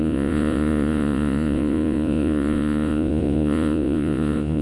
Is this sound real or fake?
fake